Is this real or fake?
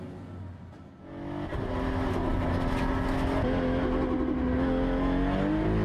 real